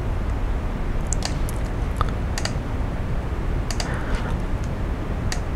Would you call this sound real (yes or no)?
yes